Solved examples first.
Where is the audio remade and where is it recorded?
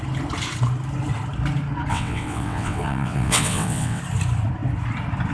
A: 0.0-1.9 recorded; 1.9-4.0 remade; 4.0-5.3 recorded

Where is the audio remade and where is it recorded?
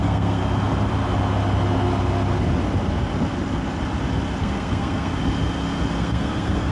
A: 0.0-0.4 remade; 0.4-4.4 recorded; 4.4-5.1 remade; 5.1-6.0 recorded; 6.0-6.7 remade